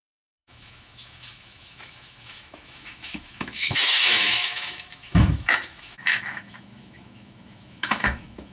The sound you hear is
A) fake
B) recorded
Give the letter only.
A